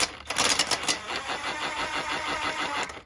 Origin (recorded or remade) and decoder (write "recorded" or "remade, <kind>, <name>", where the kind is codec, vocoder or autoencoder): recorded